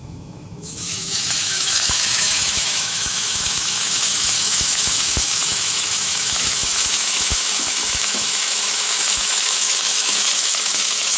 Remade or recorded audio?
remade